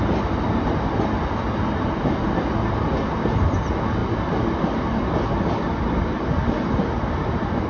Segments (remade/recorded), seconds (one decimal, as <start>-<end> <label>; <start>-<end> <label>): 0.0-7.7 recorded